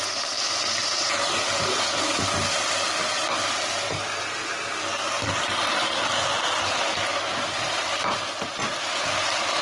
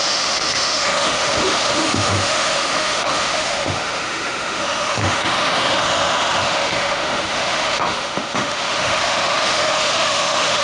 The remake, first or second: second